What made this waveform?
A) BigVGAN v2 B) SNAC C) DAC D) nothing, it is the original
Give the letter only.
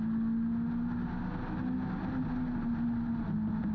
D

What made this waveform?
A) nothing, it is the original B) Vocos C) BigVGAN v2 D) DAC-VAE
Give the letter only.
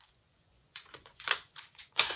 B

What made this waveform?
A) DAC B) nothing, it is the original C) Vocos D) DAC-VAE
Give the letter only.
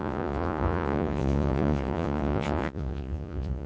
C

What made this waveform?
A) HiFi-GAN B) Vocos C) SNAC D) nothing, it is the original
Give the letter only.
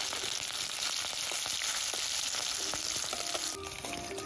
D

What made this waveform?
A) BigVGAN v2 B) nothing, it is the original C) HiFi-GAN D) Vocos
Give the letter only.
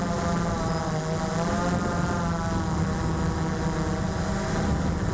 B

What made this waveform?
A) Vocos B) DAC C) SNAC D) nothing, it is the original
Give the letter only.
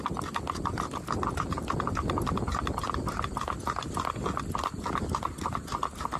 D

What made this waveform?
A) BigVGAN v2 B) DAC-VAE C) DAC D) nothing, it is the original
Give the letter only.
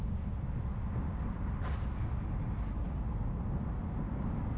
D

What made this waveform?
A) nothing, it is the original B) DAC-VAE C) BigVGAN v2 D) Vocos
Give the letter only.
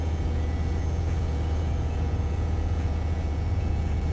D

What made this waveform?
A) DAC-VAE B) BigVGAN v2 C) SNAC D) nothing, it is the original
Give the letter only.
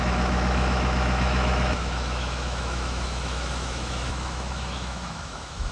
A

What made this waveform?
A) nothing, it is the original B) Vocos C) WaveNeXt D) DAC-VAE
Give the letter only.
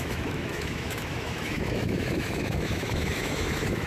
D